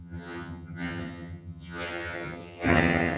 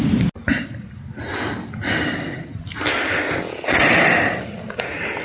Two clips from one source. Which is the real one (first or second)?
second